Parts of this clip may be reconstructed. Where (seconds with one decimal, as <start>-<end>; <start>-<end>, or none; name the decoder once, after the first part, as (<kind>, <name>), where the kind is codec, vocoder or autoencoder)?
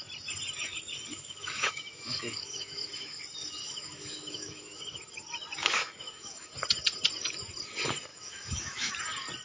1.1-3.2 (autoencoder, DAC-VAE); 3.6-4.8; 5.6-6.5; 8.1-8.9